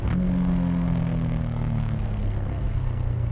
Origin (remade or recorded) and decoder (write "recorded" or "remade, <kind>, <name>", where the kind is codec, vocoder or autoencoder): remade, codec, SNAC